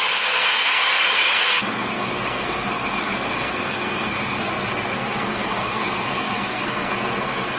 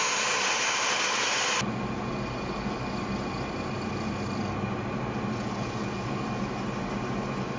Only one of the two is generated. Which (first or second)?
first